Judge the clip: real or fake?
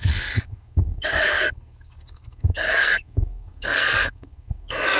fake